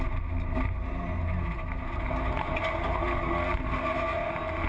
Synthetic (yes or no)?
no